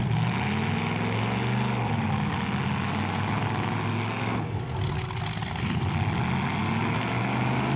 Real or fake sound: real